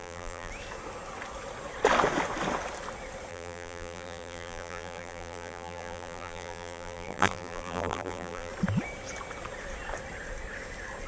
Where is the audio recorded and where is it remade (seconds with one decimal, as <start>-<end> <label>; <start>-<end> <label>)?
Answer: 0.0-0.5 remade; 0.5-3.3 recorded; 3.3-8.5 remade; 8.5-11.1 recorded